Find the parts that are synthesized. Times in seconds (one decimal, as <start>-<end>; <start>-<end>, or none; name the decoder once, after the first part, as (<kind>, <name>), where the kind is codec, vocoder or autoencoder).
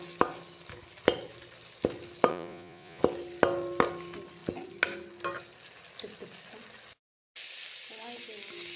2.3-3.0 (vocoder, Vocos)